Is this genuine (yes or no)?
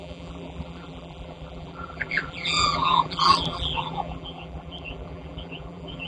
no